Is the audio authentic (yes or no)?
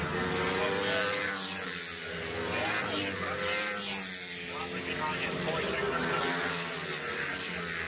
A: yes